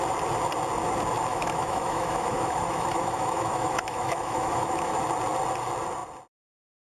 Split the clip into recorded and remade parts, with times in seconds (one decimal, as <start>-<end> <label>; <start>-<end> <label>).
0.0-1.3 recorded; 1.3-5.0 remade; 5.0-7.0 recorded